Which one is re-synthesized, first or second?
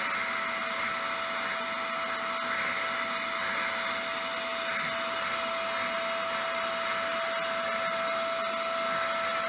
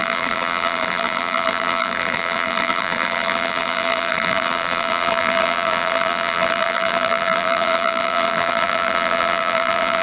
second